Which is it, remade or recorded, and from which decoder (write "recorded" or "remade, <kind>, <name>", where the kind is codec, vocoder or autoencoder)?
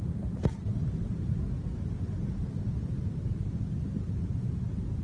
recorded